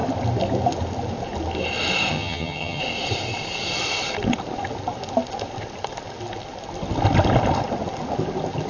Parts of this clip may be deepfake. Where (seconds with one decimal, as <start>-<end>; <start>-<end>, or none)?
2.1-2.8